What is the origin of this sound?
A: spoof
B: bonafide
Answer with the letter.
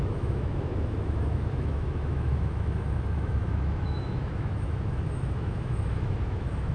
A